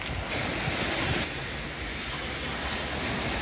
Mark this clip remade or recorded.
recorded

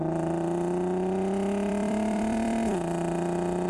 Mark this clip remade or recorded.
remade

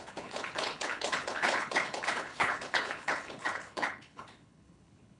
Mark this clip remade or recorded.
remade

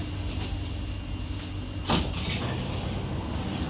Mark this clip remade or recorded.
recorded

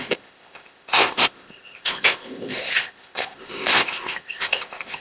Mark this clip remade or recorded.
remade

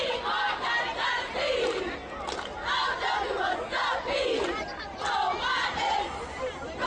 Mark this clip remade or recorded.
recorded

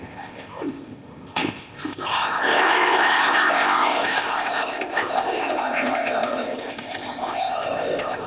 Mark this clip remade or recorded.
remade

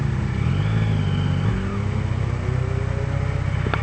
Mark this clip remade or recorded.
recorded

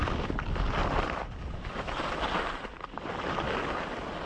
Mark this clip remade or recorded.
recorded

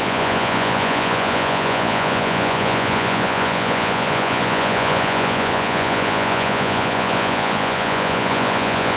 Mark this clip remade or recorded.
remade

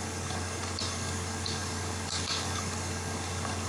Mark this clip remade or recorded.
remade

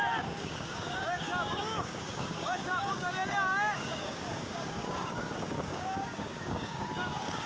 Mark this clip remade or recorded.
remade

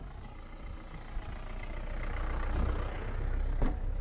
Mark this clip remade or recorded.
recorded